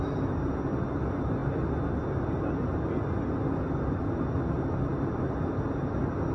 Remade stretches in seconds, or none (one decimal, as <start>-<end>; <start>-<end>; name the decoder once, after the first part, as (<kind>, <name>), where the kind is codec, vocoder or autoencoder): none